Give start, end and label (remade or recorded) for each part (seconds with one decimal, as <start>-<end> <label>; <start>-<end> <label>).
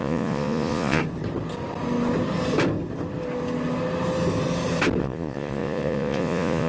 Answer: 0.0-1.0 remade; 1.0-5.0 recorded; 5.0-6.7 remade